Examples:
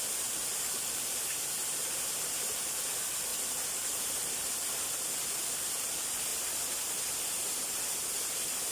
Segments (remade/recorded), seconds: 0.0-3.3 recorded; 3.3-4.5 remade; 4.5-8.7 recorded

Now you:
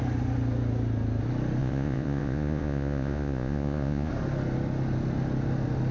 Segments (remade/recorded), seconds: 0.0-1.6 recorded; 1.6-4.1 remade; 4.1-5.9 recorded

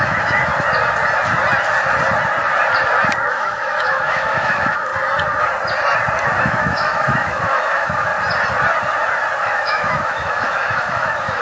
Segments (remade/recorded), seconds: 0.0-0.5 remade; 0.5-3.3 recorded; 3.3-4.9 remade; 4.9-6.4 recorded; 6.4-8.1 remade; 8.1-9.4 recorded; 9.4-11.4 remade

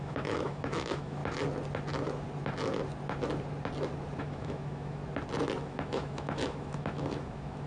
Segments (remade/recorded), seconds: 0.0-1.2 remade; 1.2-4.2 recorded; 4.2-5.0 remade; 5.0-5.6 recorded; 5.6-7.7 remade

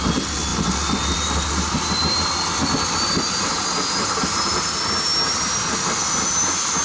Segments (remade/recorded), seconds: 0.0-5.1 remade; 5.1-5.8 recorded; 5.8-6.8 remade